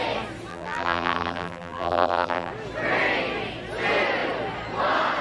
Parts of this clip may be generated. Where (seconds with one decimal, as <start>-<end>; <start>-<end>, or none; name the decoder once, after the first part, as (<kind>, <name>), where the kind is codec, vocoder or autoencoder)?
0.5-2.5 (vocoder, BigVGAN v2)